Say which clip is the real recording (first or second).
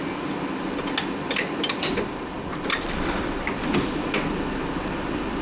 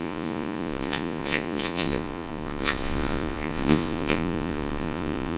first